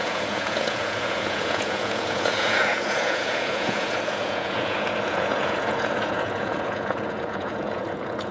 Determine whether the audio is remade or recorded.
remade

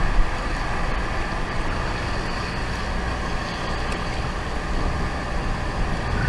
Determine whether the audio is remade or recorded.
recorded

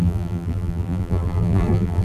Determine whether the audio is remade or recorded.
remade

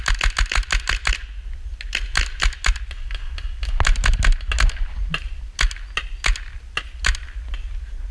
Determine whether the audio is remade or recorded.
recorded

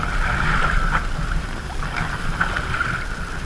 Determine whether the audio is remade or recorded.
recorded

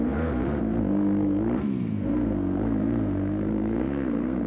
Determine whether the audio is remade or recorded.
remade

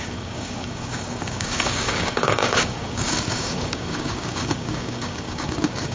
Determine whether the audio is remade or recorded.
remade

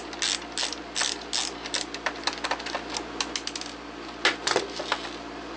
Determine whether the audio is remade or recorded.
recorded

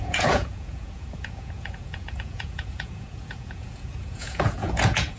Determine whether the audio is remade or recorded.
remade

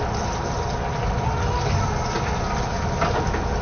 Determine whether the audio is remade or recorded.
recorded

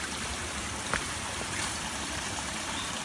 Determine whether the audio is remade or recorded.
remade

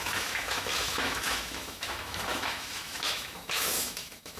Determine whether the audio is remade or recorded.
remade